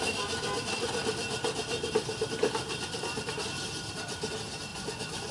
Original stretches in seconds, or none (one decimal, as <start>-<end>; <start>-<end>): 0.0-4.7